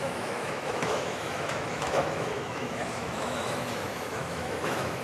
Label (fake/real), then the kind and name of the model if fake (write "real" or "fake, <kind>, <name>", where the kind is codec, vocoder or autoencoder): fake, autoencoder, DAC-VAE